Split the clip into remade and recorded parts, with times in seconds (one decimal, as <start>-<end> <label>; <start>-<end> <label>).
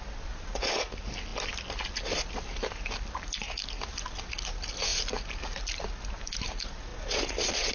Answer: 0.0-7.7 recorded